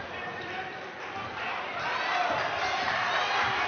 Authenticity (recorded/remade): recorded